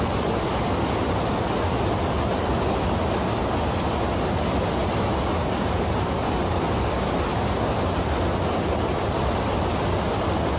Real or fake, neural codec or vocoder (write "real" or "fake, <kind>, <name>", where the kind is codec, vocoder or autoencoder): real